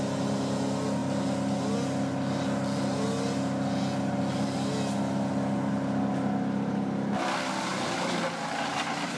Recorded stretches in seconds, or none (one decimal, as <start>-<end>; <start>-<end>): 0.0-9.2